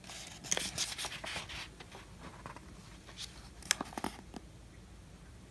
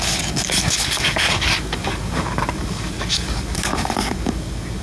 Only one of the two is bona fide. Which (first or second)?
first